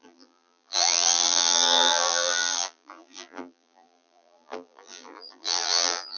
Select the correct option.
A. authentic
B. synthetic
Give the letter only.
B